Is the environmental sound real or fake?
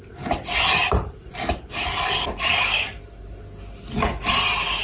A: real